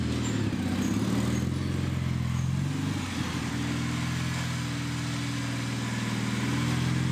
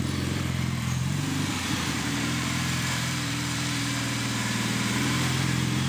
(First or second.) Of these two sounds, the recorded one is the first